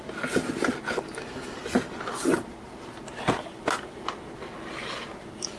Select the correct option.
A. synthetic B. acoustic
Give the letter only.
B